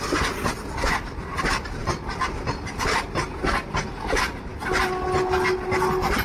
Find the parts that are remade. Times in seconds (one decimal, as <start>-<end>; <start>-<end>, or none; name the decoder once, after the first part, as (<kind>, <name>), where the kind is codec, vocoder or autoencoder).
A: none